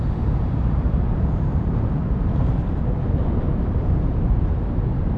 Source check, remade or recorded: remade